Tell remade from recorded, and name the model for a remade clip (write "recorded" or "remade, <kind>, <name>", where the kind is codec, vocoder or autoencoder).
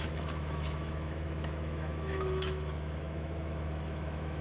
remade, autoencoder, DAC-VAE